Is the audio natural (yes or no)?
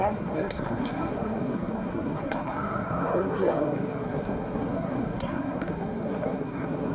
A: no